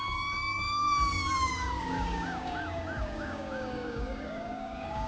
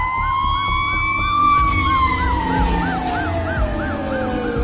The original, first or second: second